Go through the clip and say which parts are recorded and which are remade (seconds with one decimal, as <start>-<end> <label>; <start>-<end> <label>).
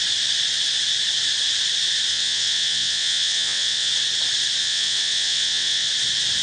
0.0-2.1 recorded; 2.1-3.9 remade; 3.9-4.6 recorded; 4.6-5.9 remade; 5.9-6.4 recorded